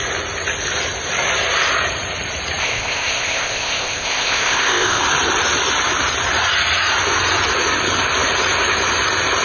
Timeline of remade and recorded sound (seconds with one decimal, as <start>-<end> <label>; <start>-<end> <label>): 0.0-2.6 recorded; 2.6-5.0 remade; 5.0-9.4 recorded